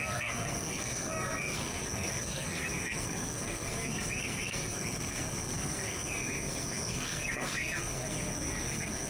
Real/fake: fake